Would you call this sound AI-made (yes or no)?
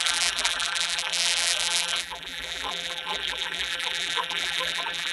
yes